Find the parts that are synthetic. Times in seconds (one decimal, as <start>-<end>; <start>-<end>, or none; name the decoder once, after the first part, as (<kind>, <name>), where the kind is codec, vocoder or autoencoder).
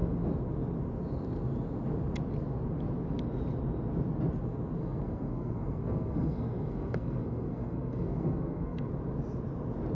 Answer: 4.8-8.9 (codec, SNAC)